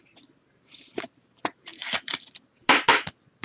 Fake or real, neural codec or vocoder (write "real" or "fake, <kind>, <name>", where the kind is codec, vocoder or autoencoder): real